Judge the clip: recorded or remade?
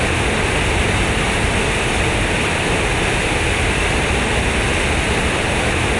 recorded